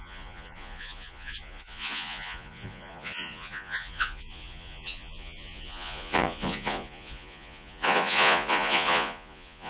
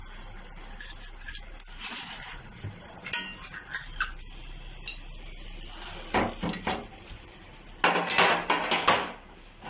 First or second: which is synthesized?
first